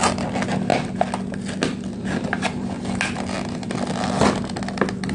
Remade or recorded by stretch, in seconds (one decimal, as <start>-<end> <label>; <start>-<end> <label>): 0.0-5.1 recorded